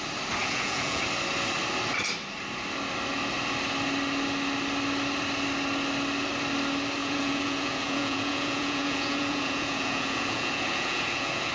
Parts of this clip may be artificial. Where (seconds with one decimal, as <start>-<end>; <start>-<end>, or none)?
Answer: 0.4-1.0; 7.0-11.5